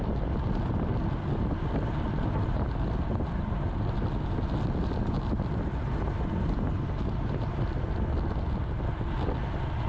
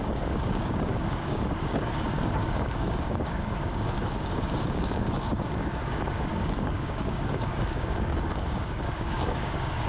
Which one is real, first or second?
first